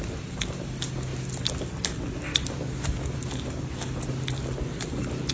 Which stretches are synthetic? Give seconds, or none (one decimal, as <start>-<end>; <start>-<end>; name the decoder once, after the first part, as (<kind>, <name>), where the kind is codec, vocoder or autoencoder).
none